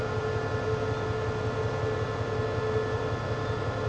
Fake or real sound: real